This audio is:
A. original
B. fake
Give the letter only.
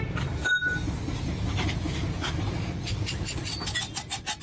A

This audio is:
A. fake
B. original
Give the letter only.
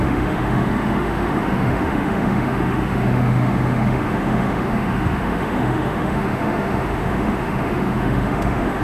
A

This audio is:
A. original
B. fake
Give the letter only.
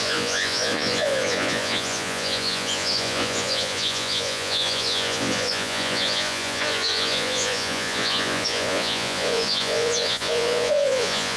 B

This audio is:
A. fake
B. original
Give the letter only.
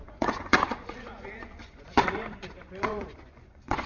A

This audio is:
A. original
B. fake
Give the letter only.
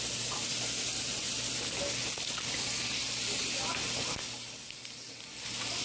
A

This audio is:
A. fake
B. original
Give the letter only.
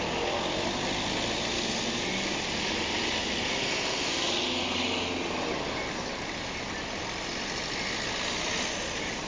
B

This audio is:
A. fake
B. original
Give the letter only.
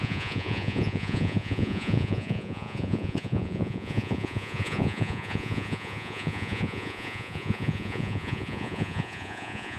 A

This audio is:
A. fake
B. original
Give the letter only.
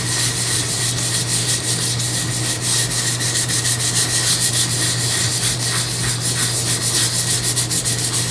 B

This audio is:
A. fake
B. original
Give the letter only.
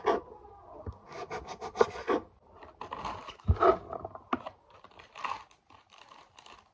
B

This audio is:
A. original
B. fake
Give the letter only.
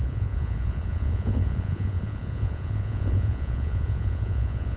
B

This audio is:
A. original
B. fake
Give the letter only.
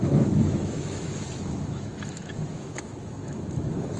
B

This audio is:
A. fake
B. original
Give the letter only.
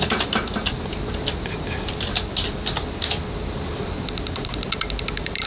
B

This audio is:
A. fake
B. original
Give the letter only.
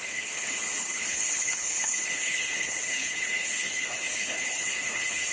A